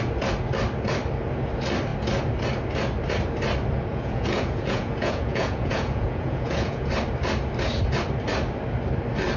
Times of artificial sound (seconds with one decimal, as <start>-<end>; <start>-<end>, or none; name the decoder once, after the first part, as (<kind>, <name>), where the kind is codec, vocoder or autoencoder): 3.9-6.9 (vocoder, Vocos)

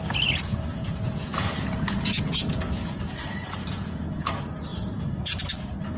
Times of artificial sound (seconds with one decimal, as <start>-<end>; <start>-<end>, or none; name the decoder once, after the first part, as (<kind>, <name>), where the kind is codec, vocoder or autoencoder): 0.7-4.3 (vocoder, Vocos); 4.7-5.4

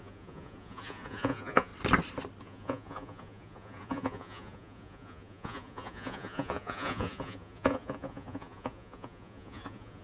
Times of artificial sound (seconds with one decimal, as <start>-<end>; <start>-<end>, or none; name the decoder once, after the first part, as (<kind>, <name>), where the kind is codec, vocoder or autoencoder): 0.0-1.7 (vocoder, Vocos); 2.4-10.0